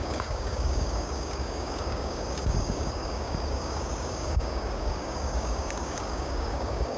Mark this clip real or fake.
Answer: fake